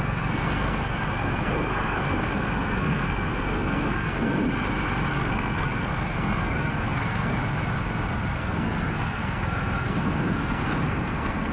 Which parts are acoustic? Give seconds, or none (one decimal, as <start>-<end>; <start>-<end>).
4.4-5.1; 7.4-8.3